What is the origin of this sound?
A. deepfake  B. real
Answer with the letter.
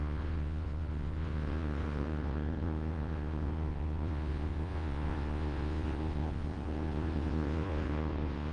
A